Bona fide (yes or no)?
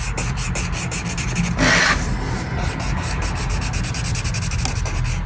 yes